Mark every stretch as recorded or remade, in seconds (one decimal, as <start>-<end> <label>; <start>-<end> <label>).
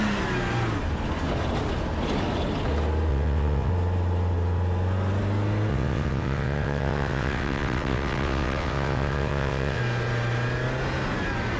0.0-3.1 recorded; 3.1-3.7 remade; 3.7-5.7 recorded; 5.7-9.8 remade; 9.8-11.6 recorded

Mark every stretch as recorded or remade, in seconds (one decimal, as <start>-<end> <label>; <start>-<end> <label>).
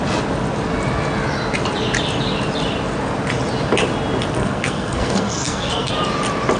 0.0-4.4 recorded; 4.4-5.9 remade; 5.9-6.6 recorded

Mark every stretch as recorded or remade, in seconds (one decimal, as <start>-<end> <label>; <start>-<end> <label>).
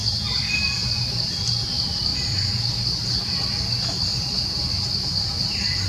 0.0-4.1 recorded; 4.1-4.8 remade; 4.8-5.9 recorded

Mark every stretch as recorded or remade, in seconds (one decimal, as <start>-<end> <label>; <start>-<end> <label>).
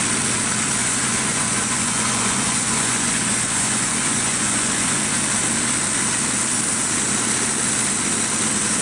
0.0-0.8 recorded; 0.8-5.0 remade; 5.0-8.8 recorded